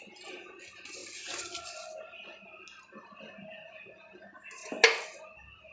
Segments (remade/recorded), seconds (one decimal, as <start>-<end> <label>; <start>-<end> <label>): 0.0-5.7 recorded